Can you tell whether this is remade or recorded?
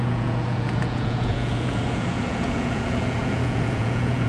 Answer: remade